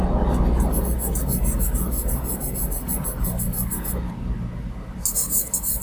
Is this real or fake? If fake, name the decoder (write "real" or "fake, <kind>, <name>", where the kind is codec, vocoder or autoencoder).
real